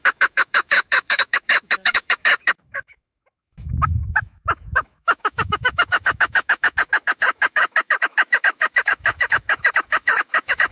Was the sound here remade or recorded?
remade